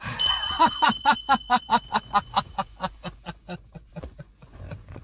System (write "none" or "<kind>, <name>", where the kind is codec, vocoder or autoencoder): vocoder, Vocos